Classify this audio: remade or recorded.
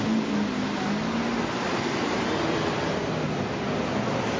recorded